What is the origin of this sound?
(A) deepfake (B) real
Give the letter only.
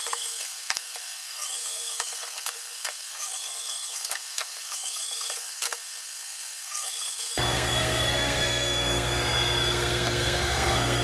A